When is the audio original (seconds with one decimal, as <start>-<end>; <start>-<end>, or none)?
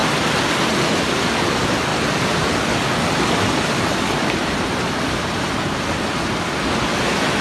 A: 0.0-4.2; 5.2-7.4